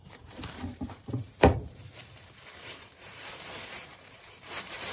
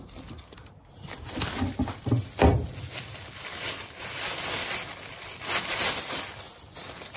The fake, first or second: first